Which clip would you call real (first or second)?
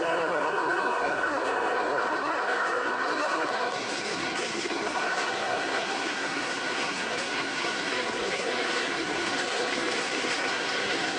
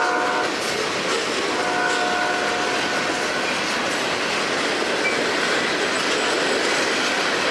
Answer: second